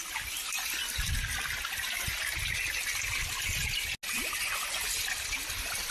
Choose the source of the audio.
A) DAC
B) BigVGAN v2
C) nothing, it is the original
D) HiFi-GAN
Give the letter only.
C